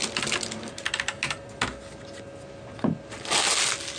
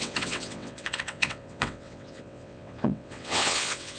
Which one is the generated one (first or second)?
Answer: second